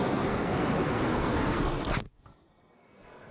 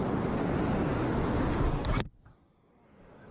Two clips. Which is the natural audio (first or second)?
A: second